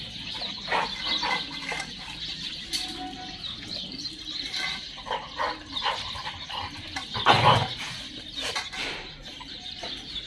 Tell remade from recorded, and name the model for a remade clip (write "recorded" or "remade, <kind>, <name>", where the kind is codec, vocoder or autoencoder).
recorded